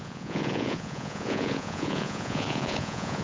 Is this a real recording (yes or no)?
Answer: no